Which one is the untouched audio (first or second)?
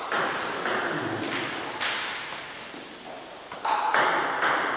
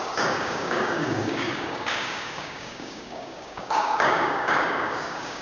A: first